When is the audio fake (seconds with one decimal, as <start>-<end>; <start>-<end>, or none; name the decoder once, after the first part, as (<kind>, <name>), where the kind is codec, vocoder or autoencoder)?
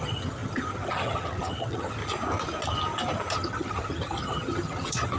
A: 0.0-2.0 (vocoder, HiFi-GAN); 3.3-5.2